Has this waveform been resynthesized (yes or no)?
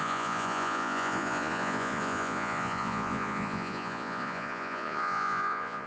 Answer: yes